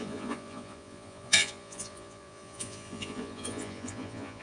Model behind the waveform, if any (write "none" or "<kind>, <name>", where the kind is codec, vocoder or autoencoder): vocoder, Vocos